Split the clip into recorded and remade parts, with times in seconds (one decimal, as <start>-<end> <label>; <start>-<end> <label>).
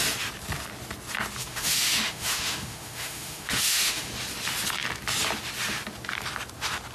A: 0.0-1.4 recorded; 1.4-4.1 remade; 4.1-6.9 recorded